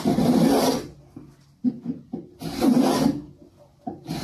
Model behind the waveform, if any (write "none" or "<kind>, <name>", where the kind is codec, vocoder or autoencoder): none